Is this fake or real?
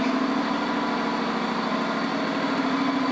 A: real